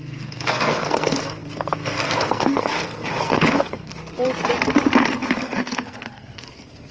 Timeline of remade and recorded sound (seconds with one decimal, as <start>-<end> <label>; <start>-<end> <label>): 0.0-4.0 remade; 4.0-5.0 recorded; 5.0-6.9 remade